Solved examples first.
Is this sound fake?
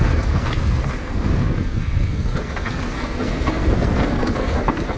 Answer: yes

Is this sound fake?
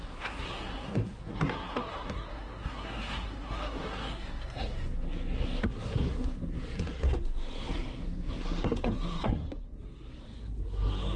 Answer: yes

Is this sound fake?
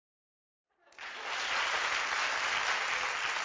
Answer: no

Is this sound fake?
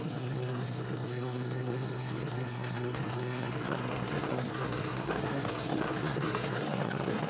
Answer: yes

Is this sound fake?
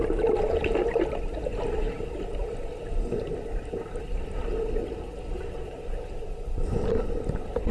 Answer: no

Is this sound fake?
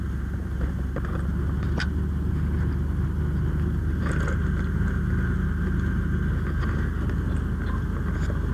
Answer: no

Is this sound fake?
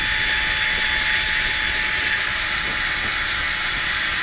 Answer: no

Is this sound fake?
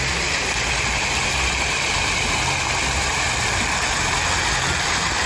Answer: no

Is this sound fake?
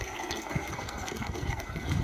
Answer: yes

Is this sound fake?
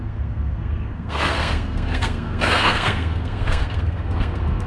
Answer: yes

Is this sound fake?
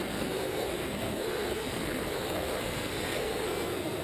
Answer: yes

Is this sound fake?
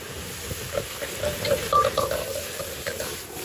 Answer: no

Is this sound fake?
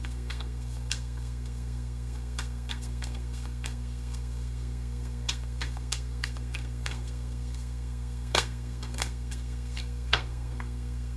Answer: yes